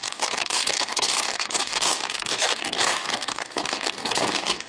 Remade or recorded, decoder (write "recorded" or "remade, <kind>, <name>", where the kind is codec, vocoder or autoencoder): remade, codec, DAC